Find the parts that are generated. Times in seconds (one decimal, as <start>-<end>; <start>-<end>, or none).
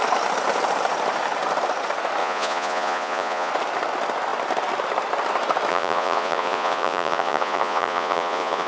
2.2-3.5; 5.7-8.7